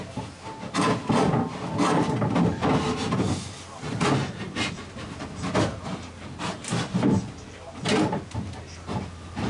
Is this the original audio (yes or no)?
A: yes